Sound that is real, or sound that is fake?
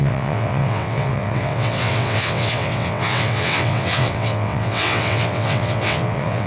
fake